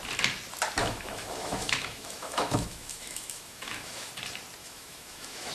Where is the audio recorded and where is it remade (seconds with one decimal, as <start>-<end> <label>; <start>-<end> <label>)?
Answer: 0.0-0.8 recorded; 0.8-4.1 remade; 4.1-4.6 recorded; 4.6-5.5 remade